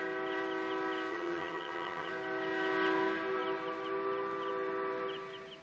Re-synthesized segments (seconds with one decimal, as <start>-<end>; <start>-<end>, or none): 1.1-2.1